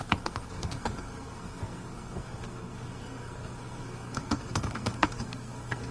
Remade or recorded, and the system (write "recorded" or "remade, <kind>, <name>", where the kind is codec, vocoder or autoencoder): remade, codec, SNAC